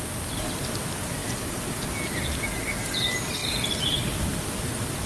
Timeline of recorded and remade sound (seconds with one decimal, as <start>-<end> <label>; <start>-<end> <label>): 0.0-5.1 recorded